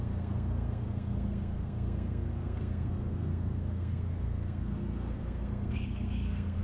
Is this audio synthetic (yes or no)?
yes